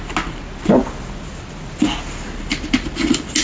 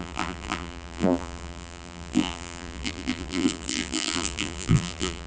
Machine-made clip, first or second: second